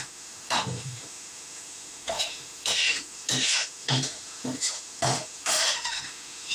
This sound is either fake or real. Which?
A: fake